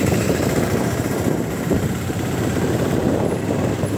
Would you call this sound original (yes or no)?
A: no